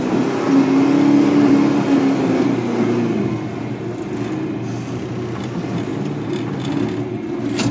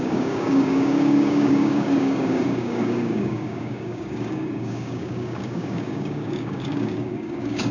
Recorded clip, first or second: first